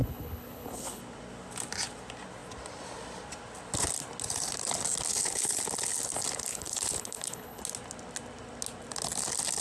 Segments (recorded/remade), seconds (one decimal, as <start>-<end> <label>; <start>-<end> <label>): 0.0-1.0 remade; 1.0-5.1 recorded; 5.1-5.6 remade; 5.6-6.5 recorded; 6.5-7.6 remade; 7.6-9.6 recorded